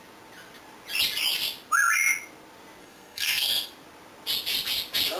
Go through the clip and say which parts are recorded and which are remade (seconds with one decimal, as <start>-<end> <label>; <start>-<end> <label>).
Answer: 0.0-2.8 recorded; 2.8-3.7 remade; 3.7-5.2 recorded